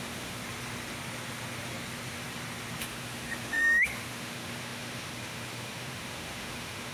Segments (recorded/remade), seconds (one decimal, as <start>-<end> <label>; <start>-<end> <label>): 0.0-0.4 remade; 0.4-2.8 recorded; 2.8-6.9 remade